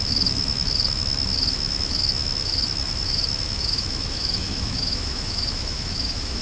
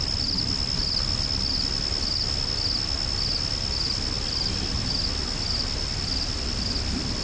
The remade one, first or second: first